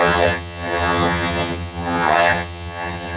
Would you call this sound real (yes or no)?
no